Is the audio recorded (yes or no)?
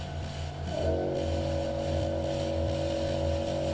yes